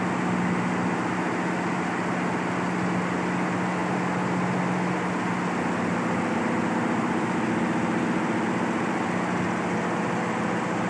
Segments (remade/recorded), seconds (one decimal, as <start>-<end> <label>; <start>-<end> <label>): 0.0-10.9 recorded